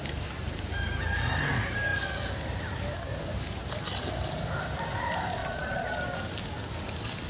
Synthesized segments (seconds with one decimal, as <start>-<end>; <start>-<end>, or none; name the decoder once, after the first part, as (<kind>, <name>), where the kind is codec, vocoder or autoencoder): 5.4-6.0 (vocoder, Vocos)